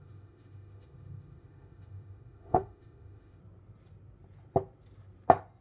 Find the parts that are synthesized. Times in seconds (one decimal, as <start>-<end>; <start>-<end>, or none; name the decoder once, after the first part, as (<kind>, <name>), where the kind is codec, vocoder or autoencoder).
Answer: 0.0-3.4 (autoencoder, DAC-VAE)